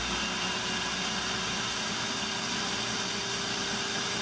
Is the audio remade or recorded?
recorded